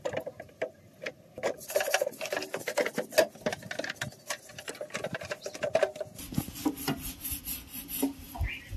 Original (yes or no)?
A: yes